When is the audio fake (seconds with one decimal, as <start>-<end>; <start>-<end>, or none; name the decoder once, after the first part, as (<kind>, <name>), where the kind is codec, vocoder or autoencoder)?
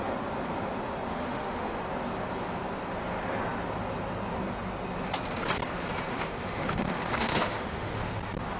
1.1-1.8 (autoencoder, DAC-VAE); 6.1-8.0